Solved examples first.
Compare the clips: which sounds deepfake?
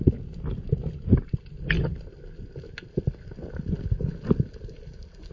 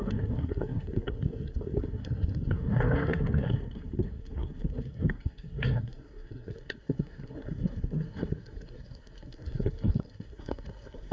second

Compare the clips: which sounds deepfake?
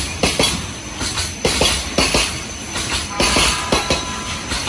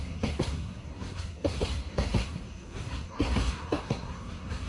second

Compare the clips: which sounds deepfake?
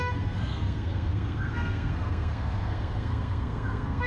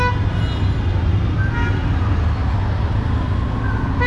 first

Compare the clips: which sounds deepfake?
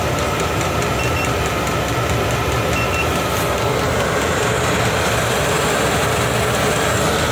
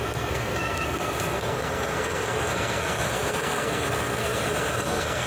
second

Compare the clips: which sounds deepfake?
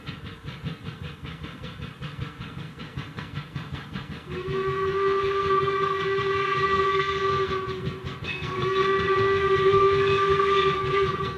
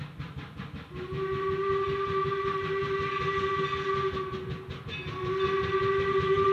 first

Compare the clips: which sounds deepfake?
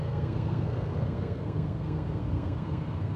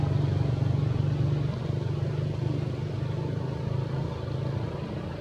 first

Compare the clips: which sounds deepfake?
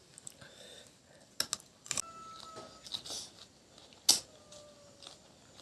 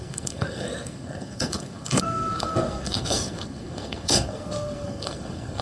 second